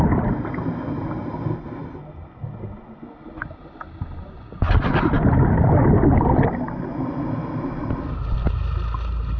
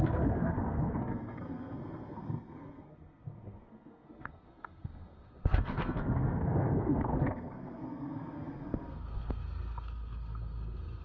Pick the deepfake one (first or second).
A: second